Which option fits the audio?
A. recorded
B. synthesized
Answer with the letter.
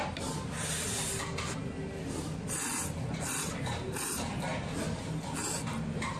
A